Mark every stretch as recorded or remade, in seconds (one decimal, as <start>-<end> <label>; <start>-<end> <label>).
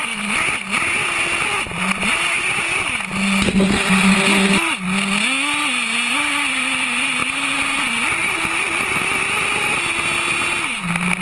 0.0-11.2 recorded